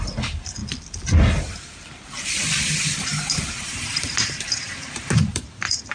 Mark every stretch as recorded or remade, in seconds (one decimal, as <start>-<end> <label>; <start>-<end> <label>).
0.0-0.6 remade; 0.6-2.3 recorded; 2.3-5.9 remade

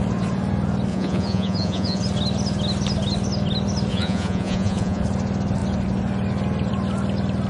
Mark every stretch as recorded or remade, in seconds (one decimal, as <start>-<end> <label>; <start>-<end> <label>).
0.0-0.9 recorded; 0.9-2.0 remade; 2.0-3.9 recorded; 3.9-5.0 remade; 5.0-7.5 recorded

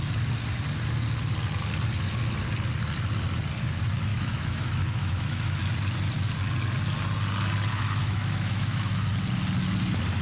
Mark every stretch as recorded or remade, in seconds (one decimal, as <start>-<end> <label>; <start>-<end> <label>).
0.0-4.1 recorded; 4.1-5.6 remade; 5.6-7.7 recorded; 7.7-9.1 remade; 9.1-10.2 recorded

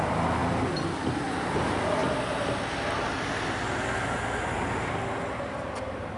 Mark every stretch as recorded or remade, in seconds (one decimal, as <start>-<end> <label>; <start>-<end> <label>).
0.0-6.2 recorded

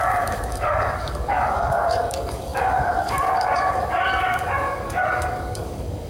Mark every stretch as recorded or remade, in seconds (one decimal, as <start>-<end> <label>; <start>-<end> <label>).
0.0-6.1 remade

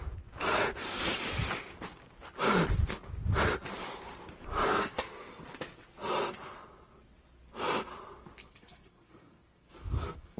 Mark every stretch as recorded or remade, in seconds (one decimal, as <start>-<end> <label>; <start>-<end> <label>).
0.0-4.7 recorded; 4.7-5.4 remade; 5.4-8.4 recorded; 8.4-10.4 remade

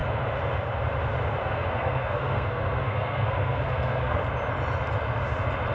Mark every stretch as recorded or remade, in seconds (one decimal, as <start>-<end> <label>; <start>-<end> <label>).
0.0-1.4 recorded; 1.4-4.2 remade; 4.2-5.7 recorded

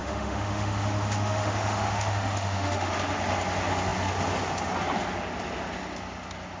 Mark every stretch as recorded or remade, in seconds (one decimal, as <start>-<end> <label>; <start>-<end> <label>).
0.0-2.9 remade; 2.9-6.6 recorded